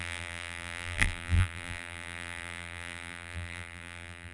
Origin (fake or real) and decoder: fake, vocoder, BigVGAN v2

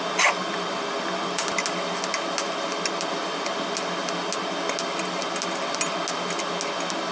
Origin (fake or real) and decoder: real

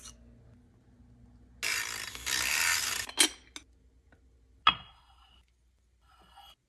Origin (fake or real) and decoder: real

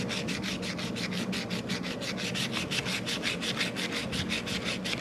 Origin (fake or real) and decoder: real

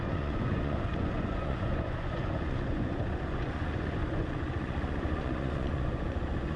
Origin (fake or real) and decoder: fake, vocoder, Vocos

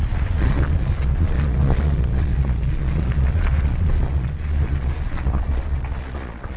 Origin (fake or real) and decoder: fake, vocoder, Vocos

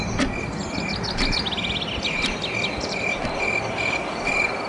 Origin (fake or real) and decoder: real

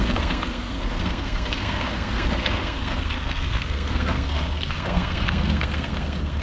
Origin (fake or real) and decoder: fake, codec, SNAC